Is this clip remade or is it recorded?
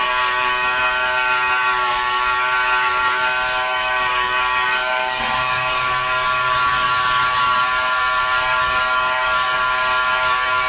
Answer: remade